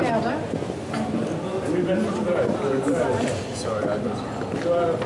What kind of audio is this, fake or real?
real